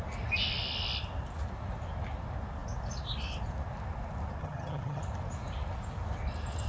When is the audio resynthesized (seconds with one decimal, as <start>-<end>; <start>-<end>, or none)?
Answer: 4.4-5.0